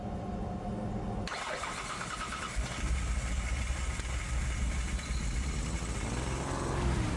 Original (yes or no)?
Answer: yes